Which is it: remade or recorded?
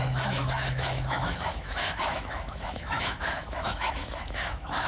remade